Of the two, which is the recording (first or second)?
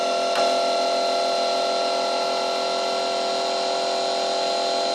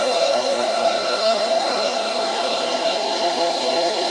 first